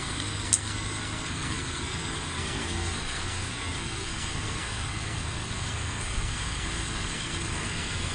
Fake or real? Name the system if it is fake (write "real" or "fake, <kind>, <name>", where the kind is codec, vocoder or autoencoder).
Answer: fake, codec, SNAC